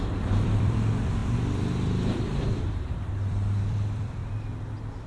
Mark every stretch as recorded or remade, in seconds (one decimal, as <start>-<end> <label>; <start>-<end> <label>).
0.0-5.1 remade